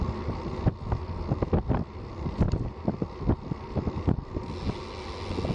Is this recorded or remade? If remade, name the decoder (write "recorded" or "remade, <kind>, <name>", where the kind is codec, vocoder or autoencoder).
recorded